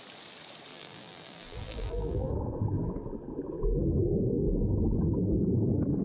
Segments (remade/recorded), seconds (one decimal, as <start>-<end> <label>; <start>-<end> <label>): 0.0-0.7 recorded; 0.7-2.3 remade; 2.3-6.0 recorded